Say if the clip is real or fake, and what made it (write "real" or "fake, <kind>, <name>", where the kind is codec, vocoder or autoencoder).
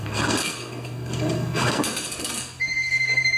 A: fake, codec, SNAC